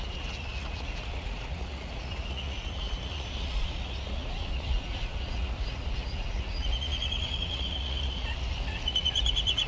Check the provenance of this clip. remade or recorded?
remade